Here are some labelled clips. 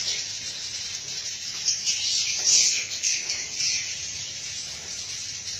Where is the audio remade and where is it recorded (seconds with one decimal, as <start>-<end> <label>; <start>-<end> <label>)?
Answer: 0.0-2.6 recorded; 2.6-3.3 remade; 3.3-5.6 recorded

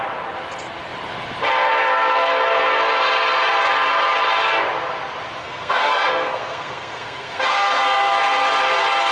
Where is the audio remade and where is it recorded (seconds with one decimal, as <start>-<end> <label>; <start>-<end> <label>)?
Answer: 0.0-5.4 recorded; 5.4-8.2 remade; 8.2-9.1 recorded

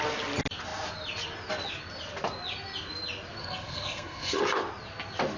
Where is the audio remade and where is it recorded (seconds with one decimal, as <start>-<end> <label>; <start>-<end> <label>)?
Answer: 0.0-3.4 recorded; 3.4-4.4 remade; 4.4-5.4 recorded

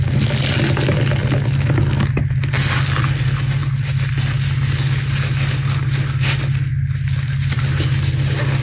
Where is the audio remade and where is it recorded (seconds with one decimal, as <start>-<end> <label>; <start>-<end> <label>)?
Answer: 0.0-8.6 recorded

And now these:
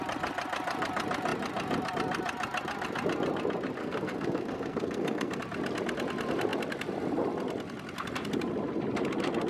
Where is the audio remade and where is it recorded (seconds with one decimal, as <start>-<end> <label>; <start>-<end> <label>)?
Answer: 0.0-3.8 recorded; 3.8-5.4 remade; 5.4-9.5 recorded

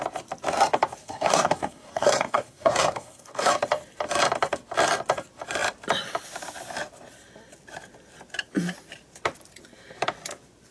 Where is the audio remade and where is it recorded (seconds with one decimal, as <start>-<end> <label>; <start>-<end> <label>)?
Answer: 0.0-1.0 recorded; 1.0-3.5 remade; 3.5-10.7 recorded